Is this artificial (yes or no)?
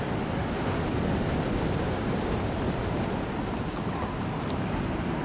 no